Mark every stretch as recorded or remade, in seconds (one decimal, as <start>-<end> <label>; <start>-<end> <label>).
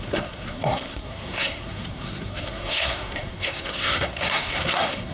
0.0-5.1 remade